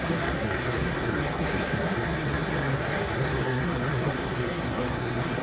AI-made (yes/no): yes